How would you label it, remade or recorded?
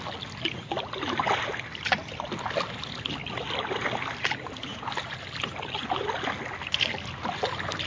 recorded